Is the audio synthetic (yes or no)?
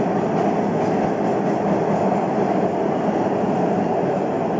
no